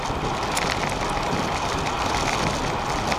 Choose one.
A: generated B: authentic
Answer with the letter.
B